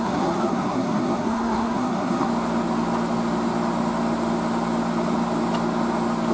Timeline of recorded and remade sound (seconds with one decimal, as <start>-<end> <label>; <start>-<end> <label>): 0.0-2.3 remade; 2.3-6.3 recorded